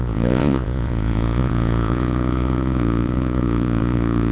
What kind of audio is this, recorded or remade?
remade